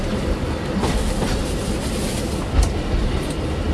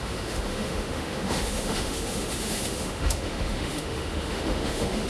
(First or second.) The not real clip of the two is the second